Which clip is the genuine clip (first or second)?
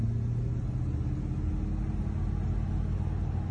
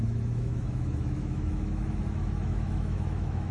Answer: first